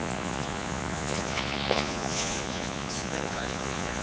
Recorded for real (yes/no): no